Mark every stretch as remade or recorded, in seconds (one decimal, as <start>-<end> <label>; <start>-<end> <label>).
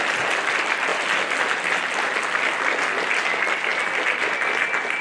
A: 0.0-5.0 recorded